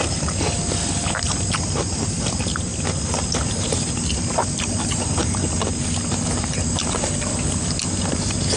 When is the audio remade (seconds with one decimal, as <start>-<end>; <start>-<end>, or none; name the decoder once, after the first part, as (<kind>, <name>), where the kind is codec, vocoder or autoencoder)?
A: none